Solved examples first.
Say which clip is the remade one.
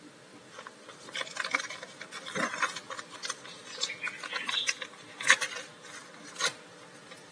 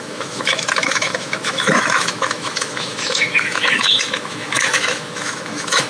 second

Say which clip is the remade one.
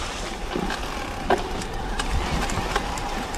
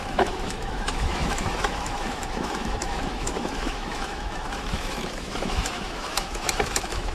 second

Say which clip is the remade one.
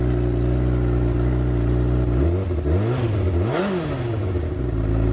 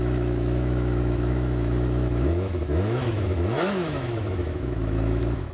second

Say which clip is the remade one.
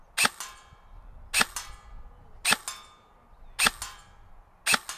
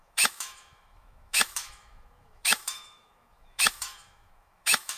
second